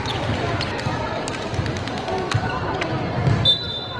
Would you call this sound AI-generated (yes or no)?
no